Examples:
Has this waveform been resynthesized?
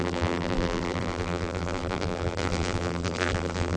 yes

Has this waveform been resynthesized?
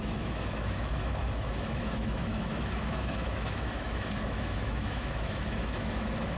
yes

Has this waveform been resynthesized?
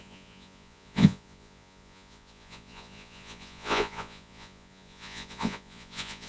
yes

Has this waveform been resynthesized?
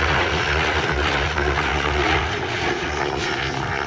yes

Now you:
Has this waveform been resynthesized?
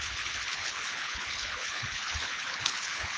yes